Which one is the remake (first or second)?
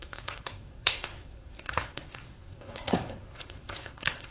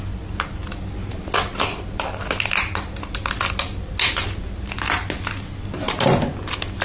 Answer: first